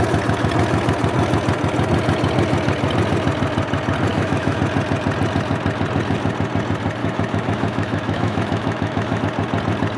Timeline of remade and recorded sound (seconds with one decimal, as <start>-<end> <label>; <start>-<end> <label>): 0.0-4.1 recorded; 4.1-4.6 remade; 4.6-7.0 recorded; 7.0-9.2 remade; 9.2-10.0 recorded